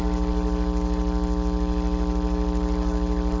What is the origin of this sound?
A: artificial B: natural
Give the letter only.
B